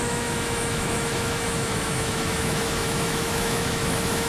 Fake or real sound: fake